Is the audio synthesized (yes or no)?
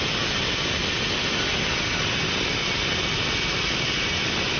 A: no